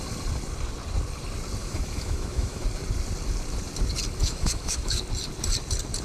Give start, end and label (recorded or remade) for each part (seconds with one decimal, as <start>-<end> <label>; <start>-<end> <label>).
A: 0.0-1.6 recorded; 1.6-2.6 remade; 2.6-4.2 recorded; 4.2-5.0 remade; 5.0-6.0 recorded